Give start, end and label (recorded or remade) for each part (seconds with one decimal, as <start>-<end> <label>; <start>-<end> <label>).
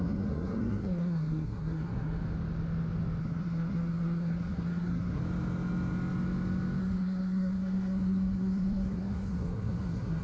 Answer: 0.0-2.2 remade; 2.2-3.2 recorded; 3.2-5.2 remade; 5.2-6.8 recorded; 6.8-10.2 remade